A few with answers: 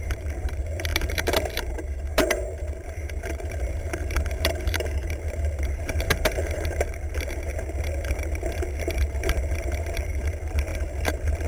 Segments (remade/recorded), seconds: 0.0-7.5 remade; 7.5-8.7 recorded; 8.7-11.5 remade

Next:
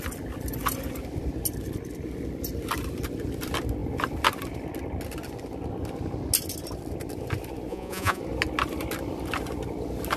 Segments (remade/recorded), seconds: 0.0-7.7 recorded; 7.7-8.2 remade; 8.2-10.2 recorded

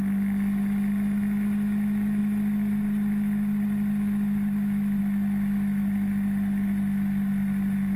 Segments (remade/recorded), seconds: 0.0-8.0 recorded

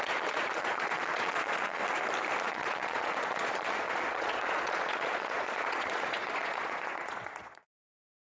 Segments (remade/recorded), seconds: 0.0-1.8 remade; 1.8-2.4 recorded; 2.4-8.2 remade

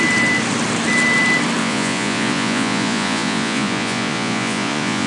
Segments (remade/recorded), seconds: 0.0-1.6 recorded; 1.6-5.1 remade

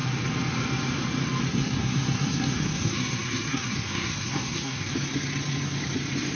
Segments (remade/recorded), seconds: 0.0-1.5 recorded; 1.5-4.9 remade; 4.9-6.3 recorded

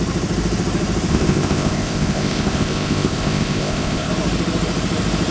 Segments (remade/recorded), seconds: 0.0-1.1 recorded; 1.1-4.1 remade; 4.1-5.3 recorded